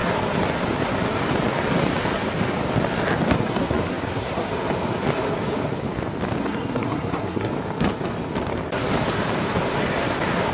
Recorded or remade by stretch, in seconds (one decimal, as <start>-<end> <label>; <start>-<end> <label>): 0.0-3.3 recorded; 3.3-4.5 remade; 4.5-6.4 recorded; 6.4-7.5 remade; 7.5-10.5 recorded